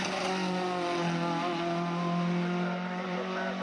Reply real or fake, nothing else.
real